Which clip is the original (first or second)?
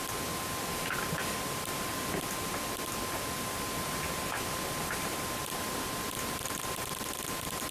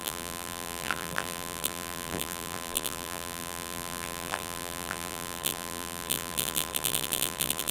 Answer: first